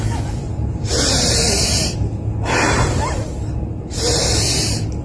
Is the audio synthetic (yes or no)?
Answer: no